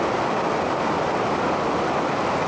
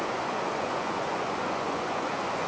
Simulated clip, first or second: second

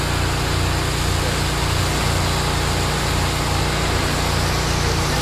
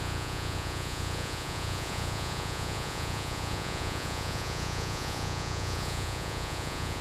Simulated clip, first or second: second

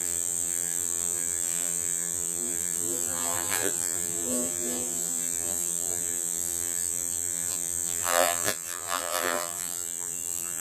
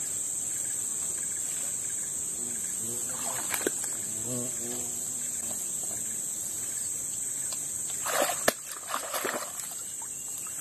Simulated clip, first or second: first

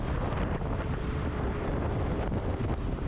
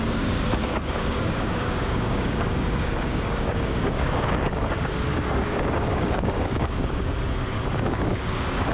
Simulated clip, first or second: second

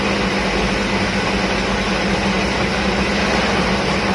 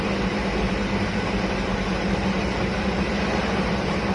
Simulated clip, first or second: second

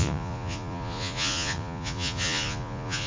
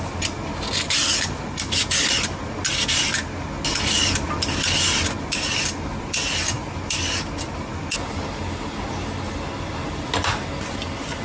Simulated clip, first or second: first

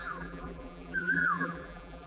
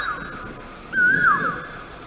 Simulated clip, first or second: first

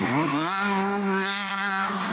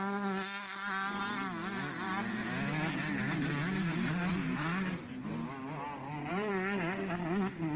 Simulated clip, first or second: first